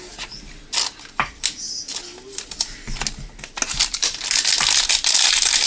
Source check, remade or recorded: recorded